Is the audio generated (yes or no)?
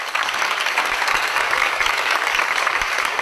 yes